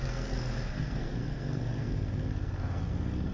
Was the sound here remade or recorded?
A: remade